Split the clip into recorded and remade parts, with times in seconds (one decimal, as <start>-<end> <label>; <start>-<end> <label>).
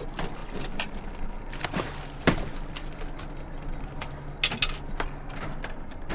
0.0-6.1 recorded